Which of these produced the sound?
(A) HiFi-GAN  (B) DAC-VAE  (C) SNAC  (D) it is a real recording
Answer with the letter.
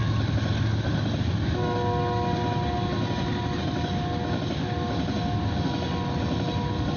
D